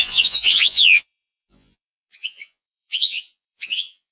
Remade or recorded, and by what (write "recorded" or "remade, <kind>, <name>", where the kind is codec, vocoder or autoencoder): remade, vocoder, Vocos